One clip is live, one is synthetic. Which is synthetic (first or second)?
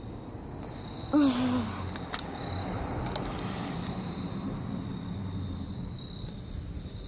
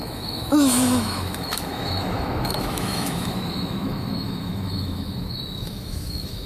second